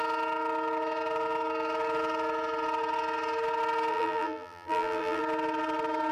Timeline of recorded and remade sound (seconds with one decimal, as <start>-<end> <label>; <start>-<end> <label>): 0.0-3.9 recorded; 3.9-5.2 remade; 5.2-6.1 recorded